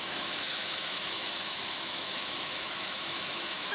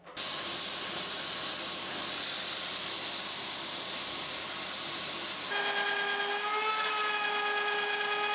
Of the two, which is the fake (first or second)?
first